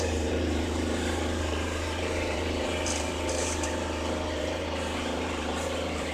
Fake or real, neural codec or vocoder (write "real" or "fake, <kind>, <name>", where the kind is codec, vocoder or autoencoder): fake, vocoder, BigVGAN v2